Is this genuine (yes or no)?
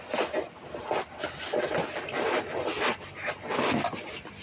yes